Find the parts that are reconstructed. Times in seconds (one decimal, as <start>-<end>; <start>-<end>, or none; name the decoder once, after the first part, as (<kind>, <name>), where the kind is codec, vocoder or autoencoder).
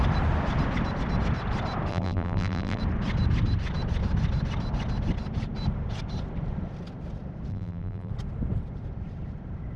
1.9-2.8 (vocoder, BigVGAN v2); 7.5-8.1